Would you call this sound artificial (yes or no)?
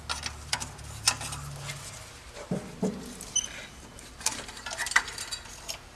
no